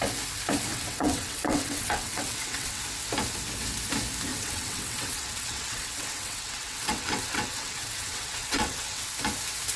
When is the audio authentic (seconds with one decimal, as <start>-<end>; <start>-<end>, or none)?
0.0-0.7; 2.8-4.3; 9.1-9.8